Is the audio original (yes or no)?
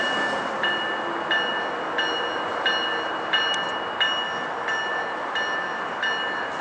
yes